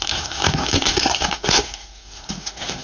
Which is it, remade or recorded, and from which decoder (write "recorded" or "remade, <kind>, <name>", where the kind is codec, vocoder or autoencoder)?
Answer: remade, codec, SNAC